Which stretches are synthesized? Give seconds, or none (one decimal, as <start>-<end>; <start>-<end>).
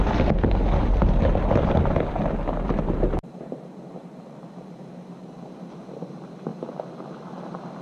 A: 0.0-7.8